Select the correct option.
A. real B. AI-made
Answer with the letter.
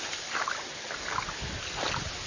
A